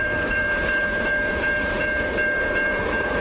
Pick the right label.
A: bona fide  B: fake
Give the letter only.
B